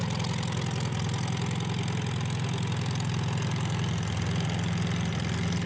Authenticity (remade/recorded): recorded